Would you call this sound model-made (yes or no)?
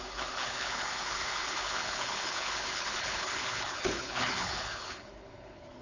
yes